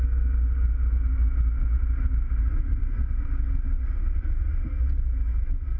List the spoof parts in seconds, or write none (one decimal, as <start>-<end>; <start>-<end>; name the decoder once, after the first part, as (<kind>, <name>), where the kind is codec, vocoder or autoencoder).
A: none